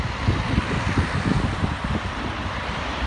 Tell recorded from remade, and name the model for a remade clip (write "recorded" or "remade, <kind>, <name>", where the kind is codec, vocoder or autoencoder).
recorded